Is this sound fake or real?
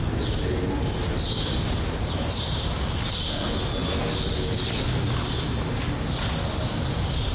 real